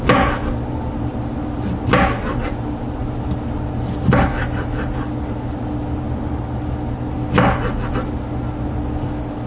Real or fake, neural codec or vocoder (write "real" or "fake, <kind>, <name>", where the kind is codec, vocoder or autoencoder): real